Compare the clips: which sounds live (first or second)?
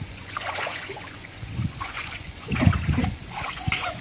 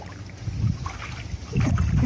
second